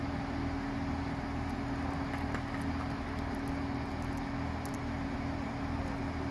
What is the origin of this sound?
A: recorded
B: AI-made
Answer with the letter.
A